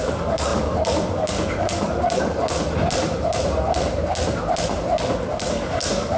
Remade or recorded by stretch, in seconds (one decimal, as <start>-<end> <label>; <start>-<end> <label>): 0.0-2.6 remade; 2.6-5.3 recorded; 5.3-6.2 remade